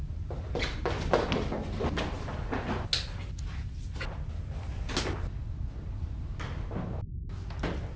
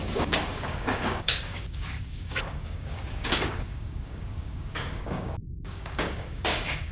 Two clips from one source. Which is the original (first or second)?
first